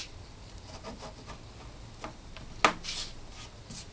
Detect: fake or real real